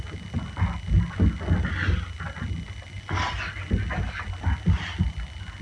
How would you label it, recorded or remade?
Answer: recorded